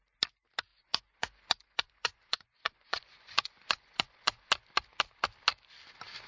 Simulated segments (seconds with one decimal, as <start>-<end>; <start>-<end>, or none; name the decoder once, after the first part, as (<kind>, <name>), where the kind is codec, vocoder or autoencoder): 0.7-4.5 (vocoder, Vocos)